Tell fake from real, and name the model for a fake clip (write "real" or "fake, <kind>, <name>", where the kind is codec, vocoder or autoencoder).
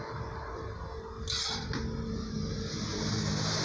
real